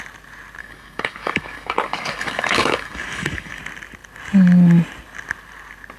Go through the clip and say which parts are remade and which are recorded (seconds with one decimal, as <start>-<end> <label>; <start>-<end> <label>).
0.0-0.6 recorded; 0.6-3.6 remade; 3.6-6.0 recorded